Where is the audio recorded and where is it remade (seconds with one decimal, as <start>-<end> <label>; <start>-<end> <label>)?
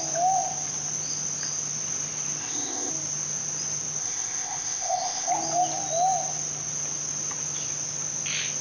0.0-2.4 recorded; 2.4-2.9 remade; 2.9-4.0 recorded; 4.0-5.3 remade; 5.3-8.6 recorded